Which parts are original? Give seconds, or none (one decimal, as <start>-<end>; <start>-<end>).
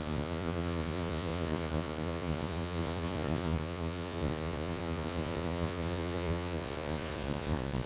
none